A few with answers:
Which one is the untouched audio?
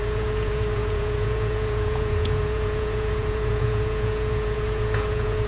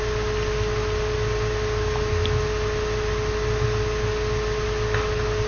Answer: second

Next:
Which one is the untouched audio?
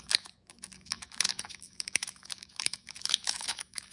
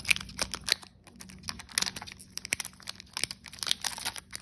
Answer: second